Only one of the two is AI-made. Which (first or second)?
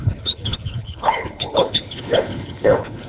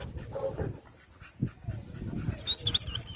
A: first